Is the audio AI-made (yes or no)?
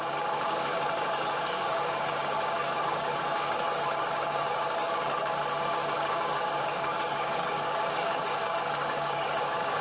yes